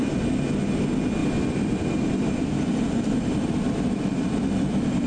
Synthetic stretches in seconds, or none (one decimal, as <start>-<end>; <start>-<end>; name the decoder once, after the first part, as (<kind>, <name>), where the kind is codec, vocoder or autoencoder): 1.2-4.3 (vocoder, BigVGAN v2)